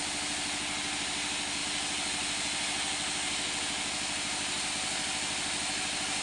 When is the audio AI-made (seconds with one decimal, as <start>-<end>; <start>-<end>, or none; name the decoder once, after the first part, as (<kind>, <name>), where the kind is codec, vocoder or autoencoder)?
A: none